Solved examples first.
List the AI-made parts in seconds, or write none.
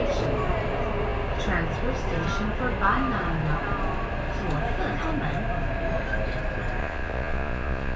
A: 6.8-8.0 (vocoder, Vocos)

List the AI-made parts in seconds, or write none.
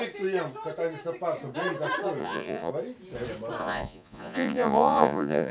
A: 2.2-2.7 (vocoder, Vocos); 3.6-5.5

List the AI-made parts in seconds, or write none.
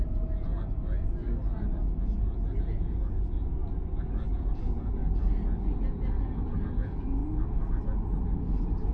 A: 0.0-0.5 (vocoder, Vocos); 1.7-3.6; 4.3-5.0; 5.8-7.2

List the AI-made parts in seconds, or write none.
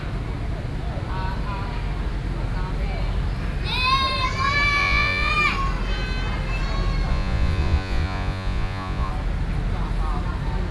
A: 4.8-5.3 (vocoder, Vocos); 7.1-9.1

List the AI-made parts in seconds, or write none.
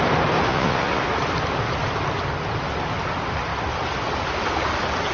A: 0.5-1.0 (vocoder, Vocos)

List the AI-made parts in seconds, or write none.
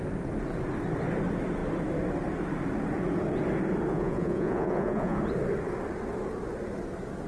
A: 3.9-5.2 (vocoder, Vocos)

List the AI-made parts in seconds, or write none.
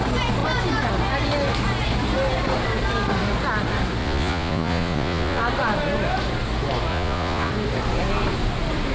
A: 4.0-5.4 (vocoder, Vocos); 6.9-7.5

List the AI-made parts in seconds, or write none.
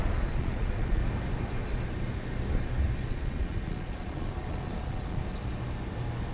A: 0.0-1.0 (vocoder, Vocos); 3.1-5.2